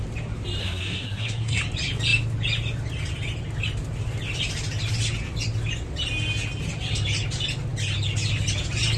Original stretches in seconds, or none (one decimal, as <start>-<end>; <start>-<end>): 0.0-0.6; 1.6-9.0